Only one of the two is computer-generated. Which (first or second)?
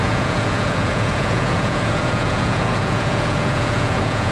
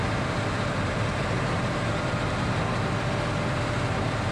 first